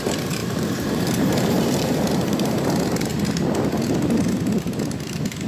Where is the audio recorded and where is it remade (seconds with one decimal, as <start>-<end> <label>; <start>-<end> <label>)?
0.0-0.4 recorded; 0.4-2.7 remade; 2.7-5.5 recorded